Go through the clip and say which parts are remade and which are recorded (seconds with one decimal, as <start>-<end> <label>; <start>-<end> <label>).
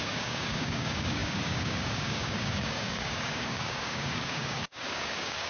0.0-5.5 remade